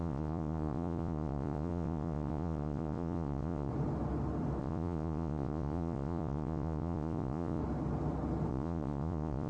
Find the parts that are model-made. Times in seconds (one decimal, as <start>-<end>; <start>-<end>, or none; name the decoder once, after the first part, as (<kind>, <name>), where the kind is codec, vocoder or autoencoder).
0.0-3.7 (vocoder, Vocos); 4.6-7.6; 8.5-9.5